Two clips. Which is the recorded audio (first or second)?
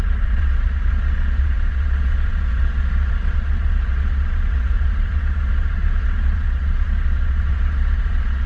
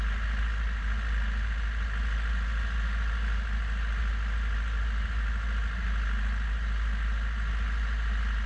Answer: second